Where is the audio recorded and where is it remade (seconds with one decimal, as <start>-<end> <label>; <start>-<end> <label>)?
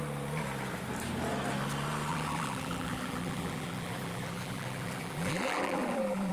0.0-2.1 recorded; 2.1-6.3 remade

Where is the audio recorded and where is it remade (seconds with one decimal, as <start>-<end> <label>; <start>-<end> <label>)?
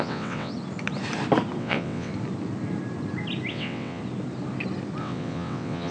0.0-0.5 remade; 0.5-1.6 recorded; 1.6-2.1 remade; 2.1-3.5 recorded; 3.5-4.0 remade; 4.0-5.0 recorded; 5.0-5.9 remade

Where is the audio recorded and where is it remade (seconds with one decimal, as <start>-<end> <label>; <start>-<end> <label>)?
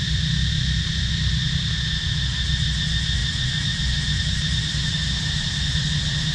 0.0-6.3 recorded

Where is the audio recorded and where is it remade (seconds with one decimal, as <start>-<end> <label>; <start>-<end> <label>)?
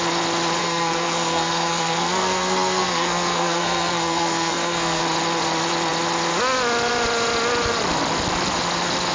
0.0-0.6 recorded; 0.6-5.0 remade; 5.0-9.1 recorded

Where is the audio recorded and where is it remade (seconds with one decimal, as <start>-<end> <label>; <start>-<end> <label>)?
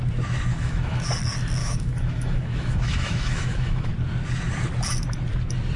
0.0-0.5 recorded; 0.5-1.1 remade; 1.1-1.6 recorded; 1.6-3.9 remade; 3.9-5.8 recorded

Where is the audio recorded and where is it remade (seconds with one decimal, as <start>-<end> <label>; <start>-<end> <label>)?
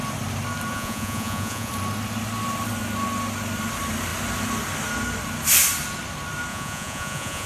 0.0-0.7 recorded; 0.7-1.7 remade; 1.7-6.5 recorded; 6.5-7.5 remade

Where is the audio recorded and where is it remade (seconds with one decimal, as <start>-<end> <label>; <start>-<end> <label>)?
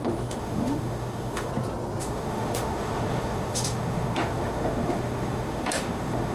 0.0-1.5 remade; 1.5-2.0 recorded; 2.0-6.3 remade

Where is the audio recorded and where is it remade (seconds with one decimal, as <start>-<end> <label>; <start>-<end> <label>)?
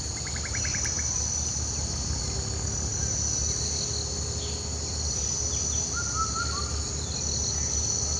0.0-8.2 recorded